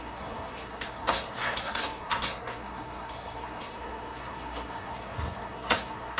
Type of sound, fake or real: fake